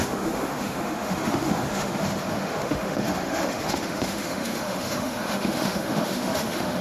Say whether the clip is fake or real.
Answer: fake